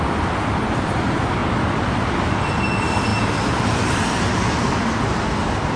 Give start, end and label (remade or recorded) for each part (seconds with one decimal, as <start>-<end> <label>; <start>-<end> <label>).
0.0-5.8 recorded